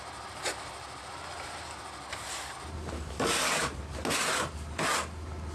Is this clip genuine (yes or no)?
yes